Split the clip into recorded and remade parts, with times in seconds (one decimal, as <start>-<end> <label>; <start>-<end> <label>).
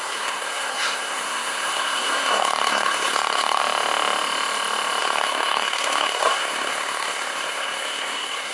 0.0-3.6 remade; 3.6-5.0 recorded; 5.0-8.5 remade